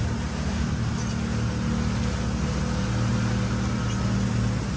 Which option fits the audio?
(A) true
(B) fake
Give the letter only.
A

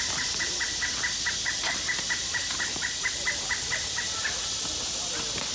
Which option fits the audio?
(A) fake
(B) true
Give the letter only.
B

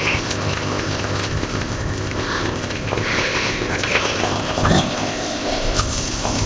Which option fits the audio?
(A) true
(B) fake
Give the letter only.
B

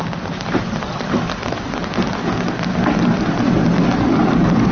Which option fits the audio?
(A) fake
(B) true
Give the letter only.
B